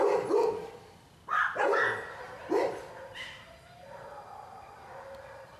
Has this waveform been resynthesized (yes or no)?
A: no